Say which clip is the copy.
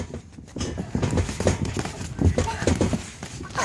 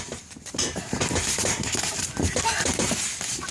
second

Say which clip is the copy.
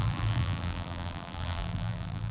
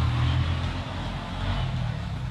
first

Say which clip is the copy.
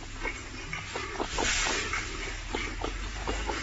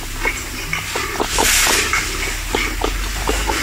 second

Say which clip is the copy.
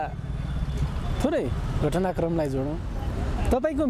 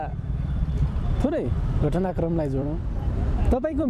second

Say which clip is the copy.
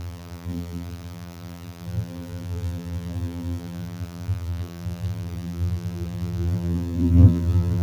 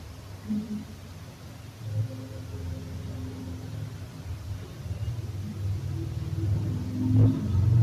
first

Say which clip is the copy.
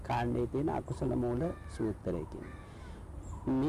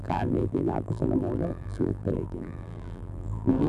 second